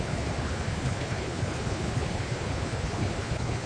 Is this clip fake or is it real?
fake